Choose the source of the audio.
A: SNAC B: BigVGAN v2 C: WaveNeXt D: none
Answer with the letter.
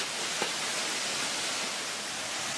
D